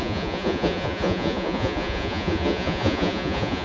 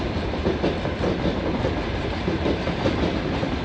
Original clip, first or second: second